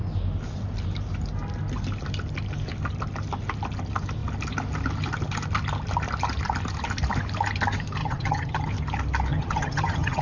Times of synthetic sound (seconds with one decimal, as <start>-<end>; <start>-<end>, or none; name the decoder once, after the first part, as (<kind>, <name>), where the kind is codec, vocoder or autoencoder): 8.0-8.7 (vocoder, HiFi-GAN); 9.3-10.2